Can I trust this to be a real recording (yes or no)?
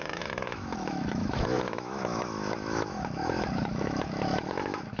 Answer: no